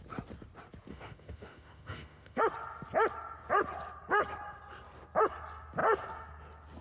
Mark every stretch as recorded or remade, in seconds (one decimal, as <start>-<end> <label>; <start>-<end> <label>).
0.0-0.9 recorded; 0.9-2.4 remade; 2.4-6.8 recorded